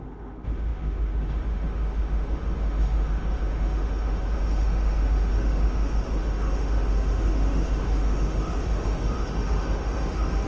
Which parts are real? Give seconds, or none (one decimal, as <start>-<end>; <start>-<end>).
none